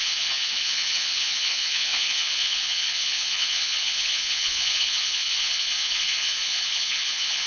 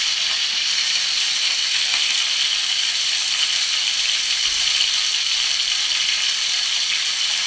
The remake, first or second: first